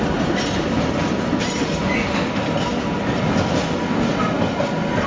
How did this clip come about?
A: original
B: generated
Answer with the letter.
A